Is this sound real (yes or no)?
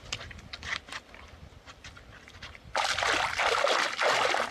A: yes